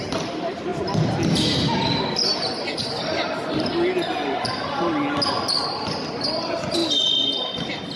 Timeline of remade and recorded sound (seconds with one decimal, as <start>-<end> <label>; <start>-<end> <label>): 0.0-8.0 recorded